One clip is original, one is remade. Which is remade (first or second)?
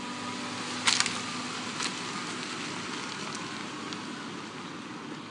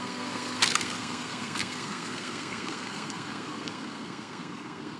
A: second